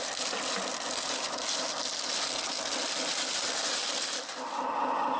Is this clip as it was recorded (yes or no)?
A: yes